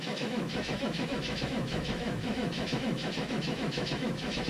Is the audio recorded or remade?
remade